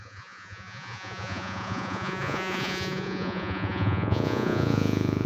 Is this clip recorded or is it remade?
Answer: remade